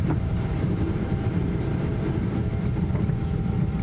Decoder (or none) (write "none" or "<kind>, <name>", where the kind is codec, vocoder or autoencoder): vocoder, BigVGAN v2